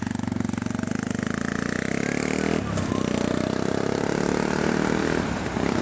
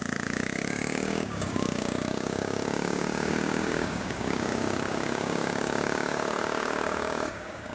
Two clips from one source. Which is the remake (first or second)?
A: second